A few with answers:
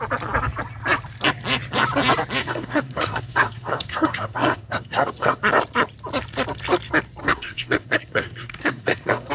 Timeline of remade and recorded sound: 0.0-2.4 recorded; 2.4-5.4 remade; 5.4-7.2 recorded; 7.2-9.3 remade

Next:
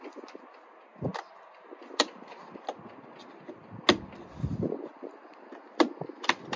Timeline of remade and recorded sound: 0.0-6.6 recorded

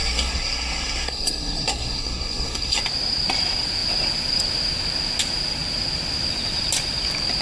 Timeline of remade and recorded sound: 0.0-2.8 remade; 2.8-7.4 recorded

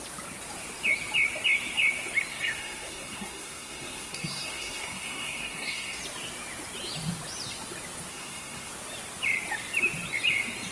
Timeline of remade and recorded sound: 0.0-2.3 recorded; 2.3-6.0 remade; 6.0-8.1 recorded; 8.1-8.7 remade; 8.7-10.7 recorded

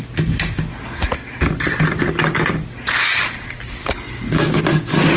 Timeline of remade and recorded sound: 0.0-3.8 recorded; 3.8-4.6 remade; 4.6-5.2 recorded

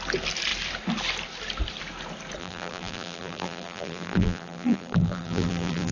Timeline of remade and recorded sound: 0.0-2.4 recorded; 2.4-5.9 remade

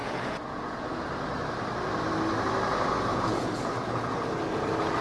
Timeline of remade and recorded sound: 0.0-1.0 remade; 1.0-3.1 recorded; 3.1-4.2 remade; 4.2-5.0 recorded